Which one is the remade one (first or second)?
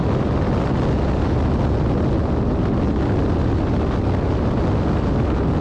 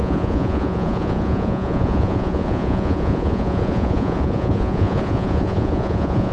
second